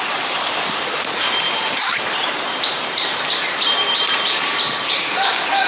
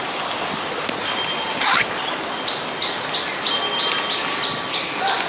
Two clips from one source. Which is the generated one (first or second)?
first